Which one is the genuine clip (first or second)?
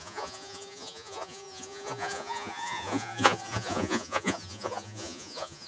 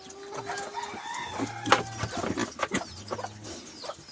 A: second